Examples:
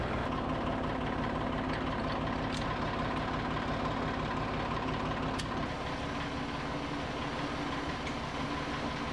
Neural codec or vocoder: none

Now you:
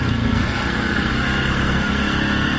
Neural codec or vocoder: codec, SNAC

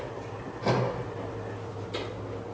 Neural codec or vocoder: none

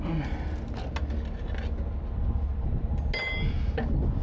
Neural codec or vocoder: none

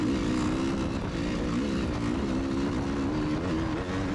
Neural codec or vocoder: none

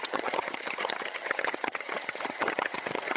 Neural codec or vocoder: vocoder, HiFi-GAN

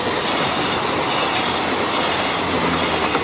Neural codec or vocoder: none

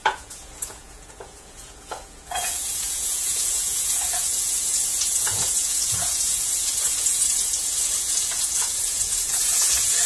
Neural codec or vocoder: vocoder, Vocos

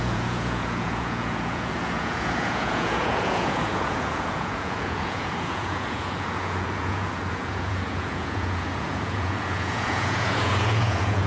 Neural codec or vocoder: vocoder, Vocos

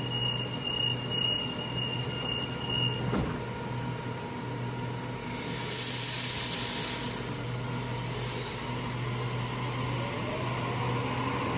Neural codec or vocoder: none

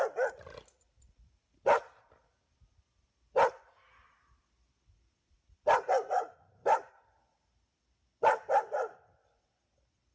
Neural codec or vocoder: none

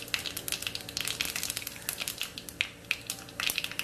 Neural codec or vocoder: none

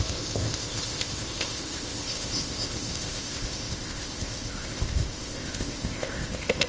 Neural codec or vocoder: codec, ZipCodec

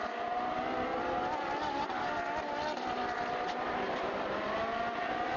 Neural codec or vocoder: none